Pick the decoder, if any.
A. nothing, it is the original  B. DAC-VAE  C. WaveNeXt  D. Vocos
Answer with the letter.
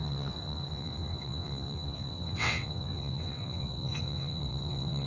C